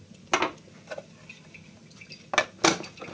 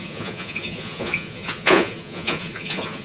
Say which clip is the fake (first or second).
second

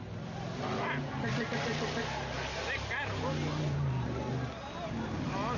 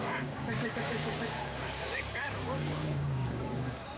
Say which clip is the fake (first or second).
second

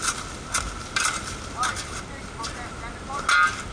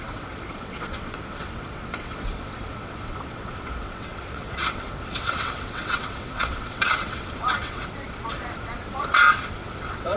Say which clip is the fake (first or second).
second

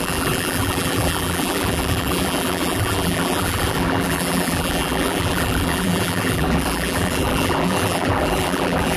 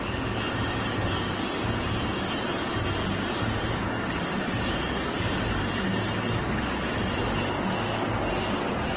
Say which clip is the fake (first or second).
first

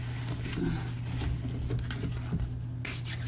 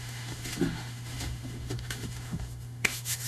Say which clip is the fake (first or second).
second